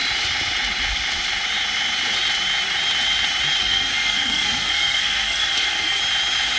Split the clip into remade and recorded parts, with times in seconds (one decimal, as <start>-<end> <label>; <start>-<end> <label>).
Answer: 0.0-3.6 recorded; 3.6-6.0 remade; 6.0-6.6 recorded